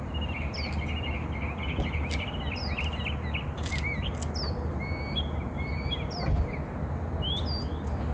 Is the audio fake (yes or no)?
no